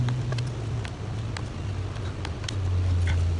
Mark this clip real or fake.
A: real